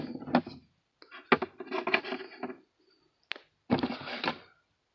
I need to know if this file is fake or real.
real